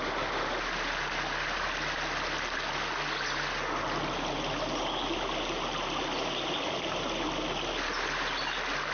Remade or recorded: recorded